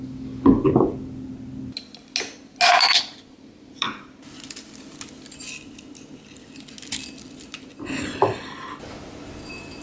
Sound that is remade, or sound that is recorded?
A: recorded